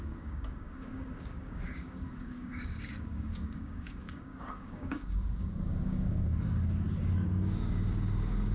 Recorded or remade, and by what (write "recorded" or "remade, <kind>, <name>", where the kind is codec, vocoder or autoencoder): remade, codec, DAC